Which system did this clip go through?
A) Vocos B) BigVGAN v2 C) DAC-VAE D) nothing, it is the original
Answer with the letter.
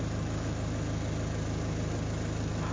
D